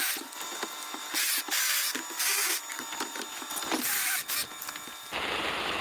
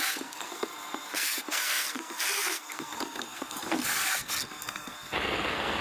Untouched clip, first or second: first